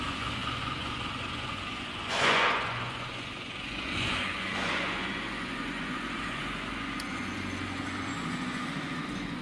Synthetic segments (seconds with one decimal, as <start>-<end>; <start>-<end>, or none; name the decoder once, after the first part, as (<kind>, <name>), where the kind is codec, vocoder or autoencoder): 0.0-9.4 (vocoder, Vocos)